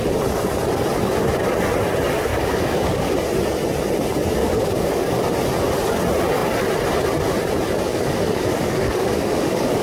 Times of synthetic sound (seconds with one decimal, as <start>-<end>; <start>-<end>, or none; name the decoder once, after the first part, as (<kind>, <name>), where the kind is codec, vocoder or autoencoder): 2.3-3.1 (codec, DAC); 4.4-5.2; 7.9-9.8